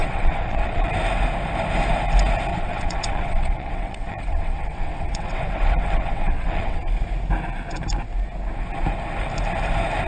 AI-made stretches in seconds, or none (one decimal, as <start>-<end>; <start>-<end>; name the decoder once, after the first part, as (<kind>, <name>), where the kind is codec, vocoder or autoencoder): 0.0-0.9 (vocoder, WaveNeXt); 2.5-6.9